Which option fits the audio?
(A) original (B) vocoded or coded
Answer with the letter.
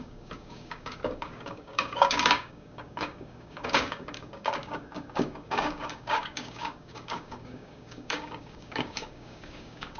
B